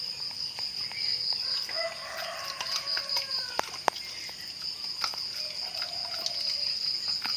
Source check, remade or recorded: recorded